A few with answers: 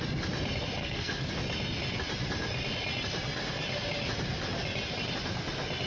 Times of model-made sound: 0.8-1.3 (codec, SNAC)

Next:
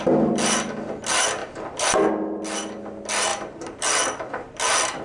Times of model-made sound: none

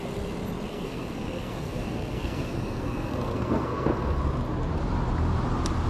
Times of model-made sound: 0.7-4.2 (codec, SNAC)

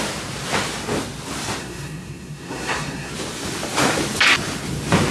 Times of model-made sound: 1.6-3.1 (codec, SNAC)

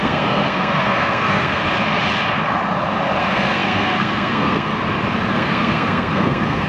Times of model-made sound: 0.0-1.6 (codec, SNAC); 3.2-4.7; 5.3-6.7

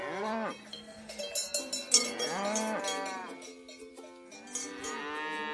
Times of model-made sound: 0.7-1.2 (codec, SNAC)

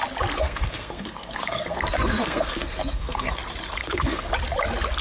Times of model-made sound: 0.4-3.4 (codec, SNAC); 3.8-4.3

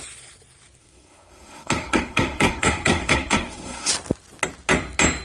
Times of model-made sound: 0.8-3.9 (codec, SNAC)